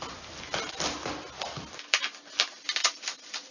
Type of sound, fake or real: real